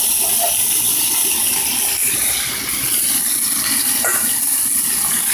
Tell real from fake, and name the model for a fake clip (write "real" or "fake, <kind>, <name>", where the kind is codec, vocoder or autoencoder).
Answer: real